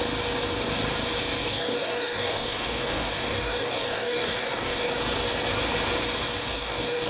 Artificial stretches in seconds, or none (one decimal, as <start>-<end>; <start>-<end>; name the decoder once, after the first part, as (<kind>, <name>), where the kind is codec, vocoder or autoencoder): 1.4-4.9 (codec, DAC); 6.4-7.1